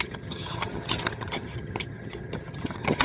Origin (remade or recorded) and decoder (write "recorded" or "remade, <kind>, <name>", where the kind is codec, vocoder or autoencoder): remade, vocoder, HiFi-GAN